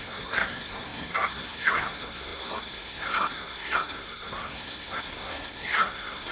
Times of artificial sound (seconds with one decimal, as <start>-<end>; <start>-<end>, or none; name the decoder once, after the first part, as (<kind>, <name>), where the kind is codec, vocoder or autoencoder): 0.0-6.3 (codec, SNAC)